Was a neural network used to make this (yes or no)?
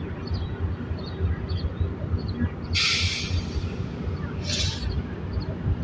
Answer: no